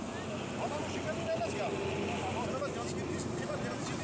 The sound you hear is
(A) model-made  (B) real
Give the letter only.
B